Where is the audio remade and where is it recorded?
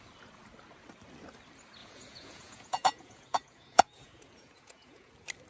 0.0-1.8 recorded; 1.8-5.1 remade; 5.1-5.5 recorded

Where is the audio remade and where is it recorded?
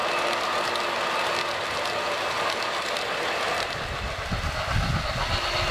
0.0-5.7 recorded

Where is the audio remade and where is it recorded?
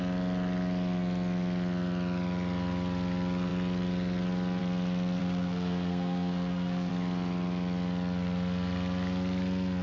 0.0-5.2 recorded; 5.2-6.9 remade; 6.9-9.8 recorded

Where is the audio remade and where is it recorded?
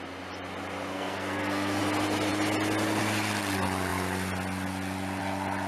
0.0-0.9 recorded; 0.9-1.8 remade; 1.8-5.7 recorded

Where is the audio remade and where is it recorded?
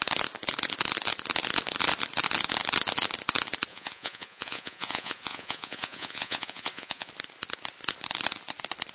0.0-3.7 recorded; 3.7-7.1 remade; 7.1-8.9 recorded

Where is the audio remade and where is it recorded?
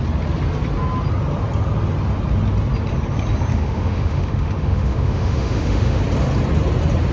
0.0-3.5 recorded; 3.5-6.0 remade; 6.0-7.1 recorded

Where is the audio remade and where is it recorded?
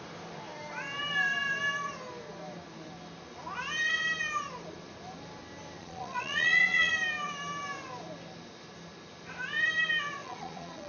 0.0-5.8 recorded; 5.8-6.9 remade; 6.9-10.2 recorded; 10.2-10.9 remade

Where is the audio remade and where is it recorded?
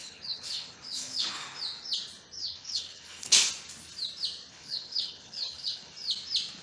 0.0-1.6 remade; 1.6-2.4 recorded; 2.4-3.5 remade; 3.5-4.5 recorded; 4.5-5.9 remade; 5.9-6.6 recorded